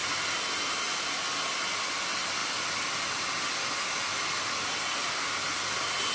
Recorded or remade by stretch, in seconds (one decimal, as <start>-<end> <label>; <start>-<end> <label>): 0.0-0.5 remade; 0.5-2.4 recorded; 2.4-4.5 remade; 4.5-6.1 recorded